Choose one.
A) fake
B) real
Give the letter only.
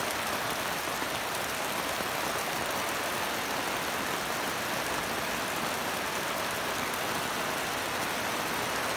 B